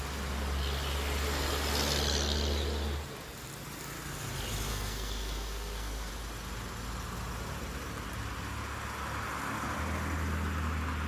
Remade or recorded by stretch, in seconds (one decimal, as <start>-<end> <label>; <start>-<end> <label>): 0.0-4.7 recorded; 4.7-6.1 remade; 6.1-11.1 recorded